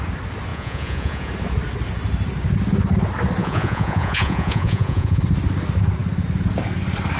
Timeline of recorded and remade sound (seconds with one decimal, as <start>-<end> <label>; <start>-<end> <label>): 0.0-0.5 recorded; 0.5-1.3 remade; 1.3-3.4 recorded; 3.4-5.2 remade; 5.2-7.2 recorded